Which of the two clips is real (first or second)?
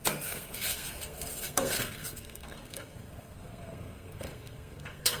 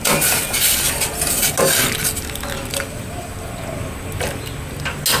second